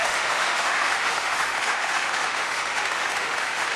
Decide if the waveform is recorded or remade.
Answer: remade